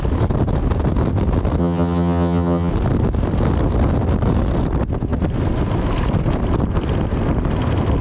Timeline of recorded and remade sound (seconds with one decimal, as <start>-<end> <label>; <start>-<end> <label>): 0.0-1.6 recorded; 1.6-2.7 remade; 2.7-8.0 recorded